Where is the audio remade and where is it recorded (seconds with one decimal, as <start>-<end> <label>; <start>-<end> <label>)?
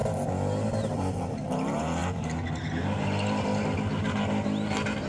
0.0-5.1 recorded